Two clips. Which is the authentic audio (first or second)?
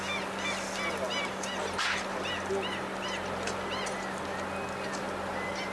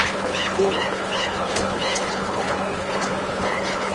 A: first